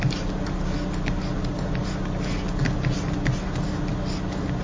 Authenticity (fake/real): real